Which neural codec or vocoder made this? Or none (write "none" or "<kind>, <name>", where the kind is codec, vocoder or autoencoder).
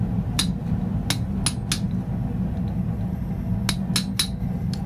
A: none